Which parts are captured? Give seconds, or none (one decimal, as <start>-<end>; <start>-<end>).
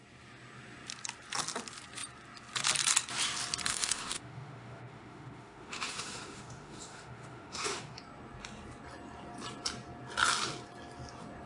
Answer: 0.0-3.7; 8.0-11.5